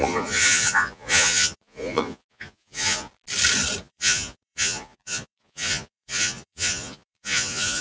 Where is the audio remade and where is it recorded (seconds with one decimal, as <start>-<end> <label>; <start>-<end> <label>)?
0.0-3.1 remade; 3.1-3.8 recorded; 3.8-7.8 remade